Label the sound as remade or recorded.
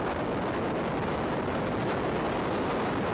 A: recorded